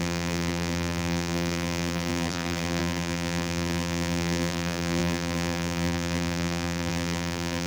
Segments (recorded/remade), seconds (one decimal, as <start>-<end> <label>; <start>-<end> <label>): 0.0-7.7 remade